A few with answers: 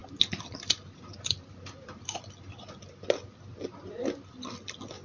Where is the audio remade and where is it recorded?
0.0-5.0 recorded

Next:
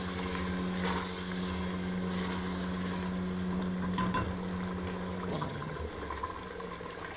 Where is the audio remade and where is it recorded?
0.0-5.3 recorded; 5.3-5.8 remade; 5.8-7.2 recorded

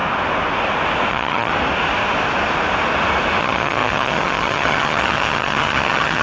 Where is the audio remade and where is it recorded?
0.0-1.1 recorded; 1.1-1.5 remade; 1.5-3.4 recorded; 3.4-6.2 remade

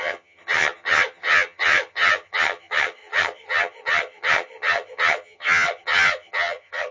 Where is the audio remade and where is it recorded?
0.0-6.9 remade